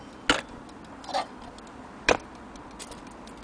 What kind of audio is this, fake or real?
real